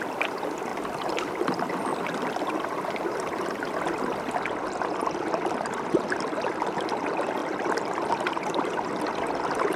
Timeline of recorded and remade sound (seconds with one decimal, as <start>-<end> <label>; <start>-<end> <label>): 0.0-0.7 recorded; 0.7-2.1 remade; 2.1-7.4 recorded; 7.4-8.6 remade; 8.6-9.8 recorded